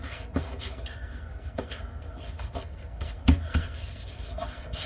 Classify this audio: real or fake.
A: fake